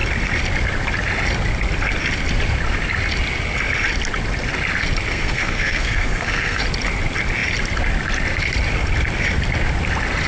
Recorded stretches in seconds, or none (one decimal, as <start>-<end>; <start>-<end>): 0.0-5.1; 6.6-10.3